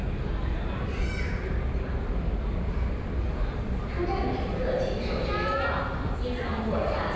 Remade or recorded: recorded